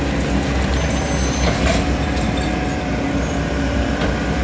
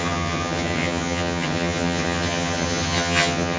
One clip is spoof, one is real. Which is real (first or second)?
first